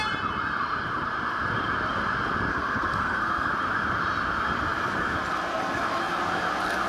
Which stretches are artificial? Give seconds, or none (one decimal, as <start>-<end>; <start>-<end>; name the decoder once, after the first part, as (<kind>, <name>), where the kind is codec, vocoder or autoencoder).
2.5-3.5 (codec, SNAC)